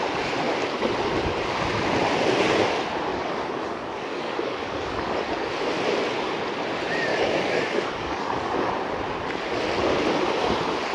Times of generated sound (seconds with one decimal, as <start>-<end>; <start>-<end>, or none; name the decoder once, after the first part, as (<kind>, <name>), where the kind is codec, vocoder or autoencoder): 3.1-5.5 (codec, DAC); 7.1-8.7